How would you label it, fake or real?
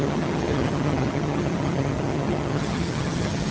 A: fake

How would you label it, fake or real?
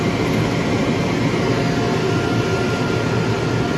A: real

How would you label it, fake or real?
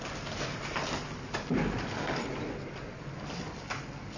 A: real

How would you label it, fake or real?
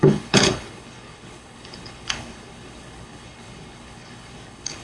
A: fake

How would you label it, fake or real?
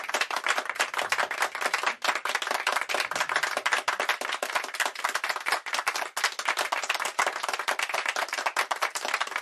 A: real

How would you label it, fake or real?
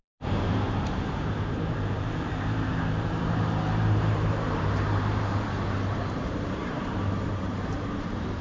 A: fake